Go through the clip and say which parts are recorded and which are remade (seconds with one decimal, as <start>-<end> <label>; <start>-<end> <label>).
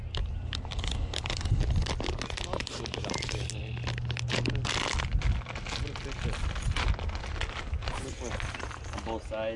0.0-9.6 recorded